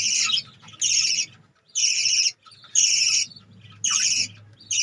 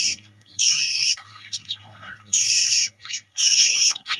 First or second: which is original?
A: first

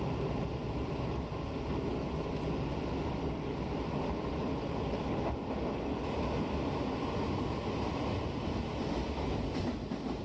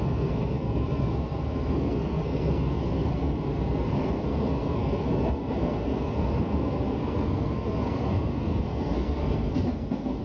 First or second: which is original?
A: first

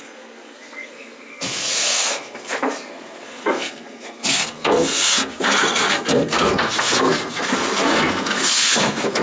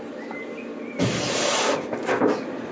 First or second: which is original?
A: second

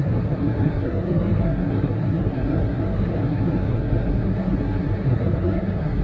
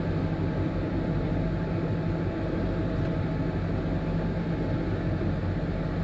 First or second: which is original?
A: second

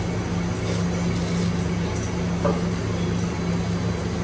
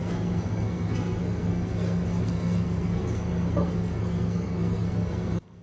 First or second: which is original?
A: first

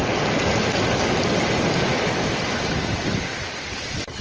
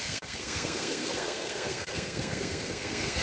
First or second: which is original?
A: first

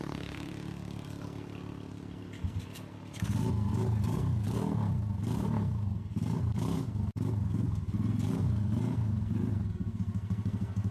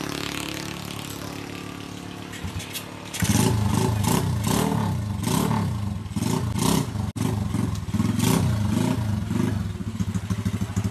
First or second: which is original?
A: second